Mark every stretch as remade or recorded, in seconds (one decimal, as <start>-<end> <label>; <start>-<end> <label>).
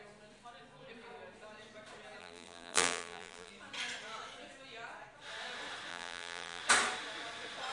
0.0-2.2 recorded; 2.2-3.5 remade; 3.5-5.9 recorded; 5.9-6.6 remade; 6.6-7.7 recorded